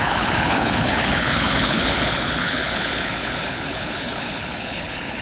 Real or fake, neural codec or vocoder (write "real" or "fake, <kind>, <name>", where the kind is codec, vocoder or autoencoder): fake, codec, HILCodec